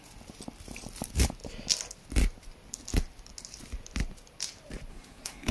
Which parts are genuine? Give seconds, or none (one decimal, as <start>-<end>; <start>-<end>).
0.0-4.9